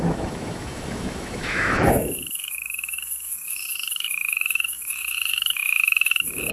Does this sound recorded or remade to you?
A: remade